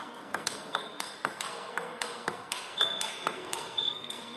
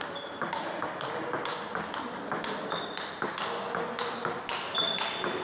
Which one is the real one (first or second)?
second